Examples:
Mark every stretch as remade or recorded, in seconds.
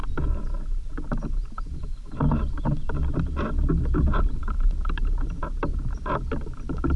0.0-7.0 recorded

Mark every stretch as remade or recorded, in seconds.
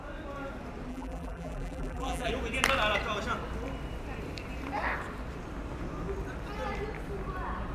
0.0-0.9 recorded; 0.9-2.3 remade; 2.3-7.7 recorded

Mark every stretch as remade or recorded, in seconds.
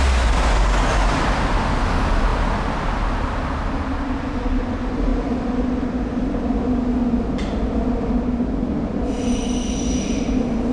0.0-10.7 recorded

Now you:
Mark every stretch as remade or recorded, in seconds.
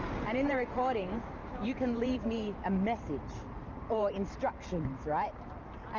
0.0-6.0 remade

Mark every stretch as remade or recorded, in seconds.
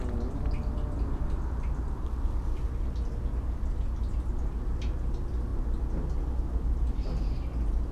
0.0-7.9 recorded